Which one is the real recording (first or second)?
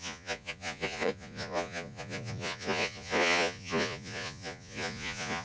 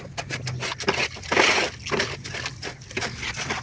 second